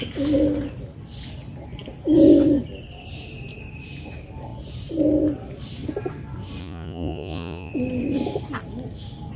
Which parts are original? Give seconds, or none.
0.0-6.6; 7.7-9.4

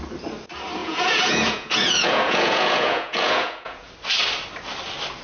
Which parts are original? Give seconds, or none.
0.0-0.8; 3.9-5.2

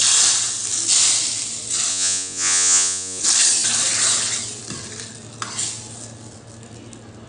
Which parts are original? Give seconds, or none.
0.0-1.9; 3.2-7.3